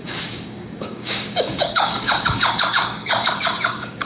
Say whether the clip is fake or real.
fake